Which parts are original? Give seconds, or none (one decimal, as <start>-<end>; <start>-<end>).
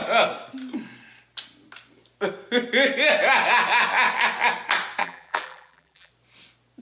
0.0-5.0; 6.1-6.8